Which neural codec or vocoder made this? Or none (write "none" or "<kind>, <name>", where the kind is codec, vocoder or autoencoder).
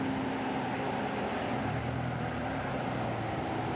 none